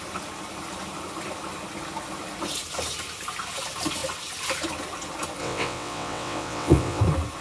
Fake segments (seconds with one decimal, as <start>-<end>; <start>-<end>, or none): 5.4-7.0

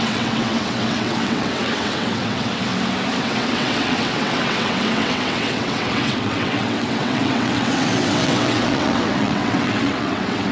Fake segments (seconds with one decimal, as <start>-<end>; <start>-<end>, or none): 0.0-2.7; 3.2-10.5

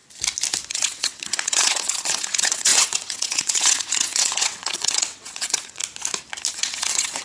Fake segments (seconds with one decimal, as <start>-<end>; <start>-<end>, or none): 0.7-5.8; 6.5-7.2

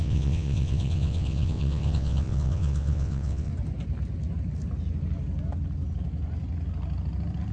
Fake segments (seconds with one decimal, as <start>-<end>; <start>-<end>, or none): 0.0-3.5

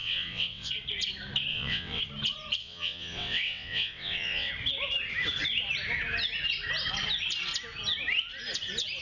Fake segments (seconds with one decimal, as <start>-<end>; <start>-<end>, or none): 0.0-0.7; 1.5-2.0; 2.6-4.5